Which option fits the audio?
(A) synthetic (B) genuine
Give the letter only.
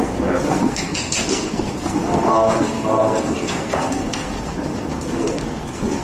A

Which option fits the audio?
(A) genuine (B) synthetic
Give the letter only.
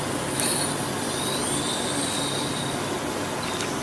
A